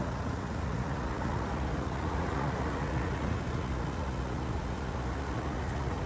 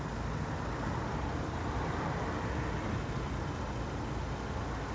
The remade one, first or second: first